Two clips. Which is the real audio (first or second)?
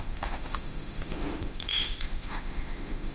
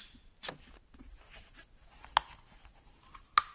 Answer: second